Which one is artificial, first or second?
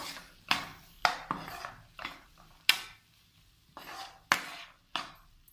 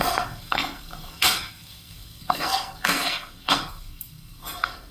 second